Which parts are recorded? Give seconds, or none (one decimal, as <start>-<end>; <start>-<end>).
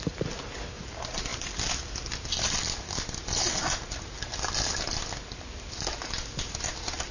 0.0-7.1